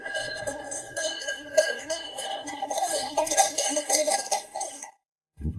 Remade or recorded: remade